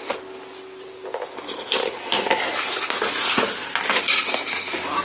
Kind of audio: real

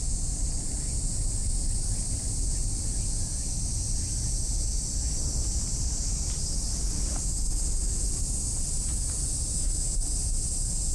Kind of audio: real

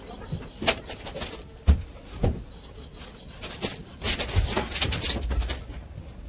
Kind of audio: real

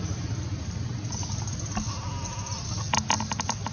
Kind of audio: real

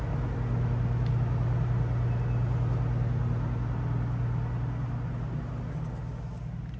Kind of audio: real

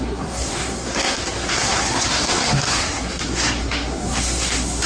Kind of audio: fake